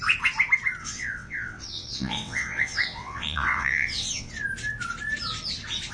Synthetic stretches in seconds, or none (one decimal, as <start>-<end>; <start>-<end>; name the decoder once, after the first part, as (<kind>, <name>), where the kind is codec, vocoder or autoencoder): 0.8-4.3 (vocoder, WaveNeXt)